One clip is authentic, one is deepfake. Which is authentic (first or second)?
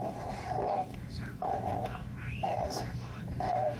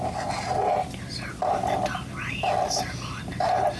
second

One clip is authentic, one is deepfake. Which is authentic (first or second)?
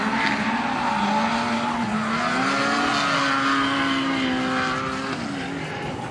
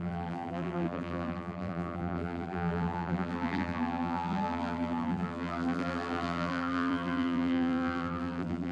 first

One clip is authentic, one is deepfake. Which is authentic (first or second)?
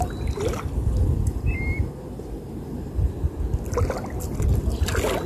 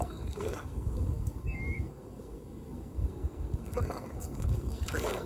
first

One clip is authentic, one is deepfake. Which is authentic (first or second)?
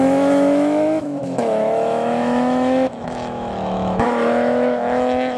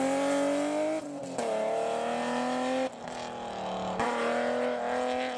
second